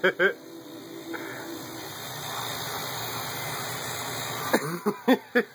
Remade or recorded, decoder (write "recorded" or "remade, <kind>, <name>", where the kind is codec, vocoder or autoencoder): remade, vocoder, BigVGAN v2